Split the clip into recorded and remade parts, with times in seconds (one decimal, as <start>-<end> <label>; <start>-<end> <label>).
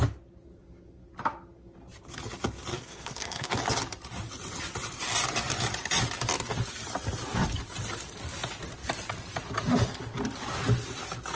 0.0-2.7 recorded; 2.7-3.5 remade; 3.5-11.4 recorded